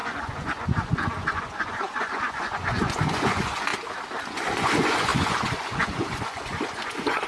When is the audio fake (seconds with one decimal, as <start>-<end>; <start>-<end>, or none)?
0.0-3.7; 4.3-7.3